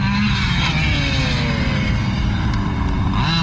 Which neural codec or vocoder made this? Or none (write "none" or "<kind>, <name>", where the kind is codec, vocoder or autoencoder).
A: none